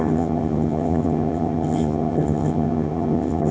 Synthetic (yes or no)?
yes